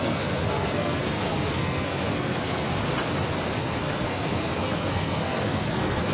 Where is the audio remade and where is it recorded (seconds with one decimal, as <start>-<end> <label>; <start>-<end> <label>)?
0.0-2.8 remade; 2.8-3.6 recorded; 3.6-6.1 remade